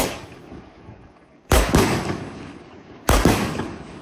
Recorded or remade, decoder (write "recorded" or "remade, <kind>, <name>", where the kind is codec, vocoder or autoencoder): remade, codec, DAC